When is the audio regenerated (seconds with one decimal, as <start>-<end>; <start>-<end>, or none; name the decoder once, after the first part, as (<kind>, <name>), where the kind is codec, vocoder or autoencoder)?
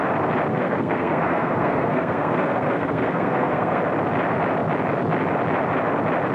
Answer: 0.5-3.8 (codec, SNAC)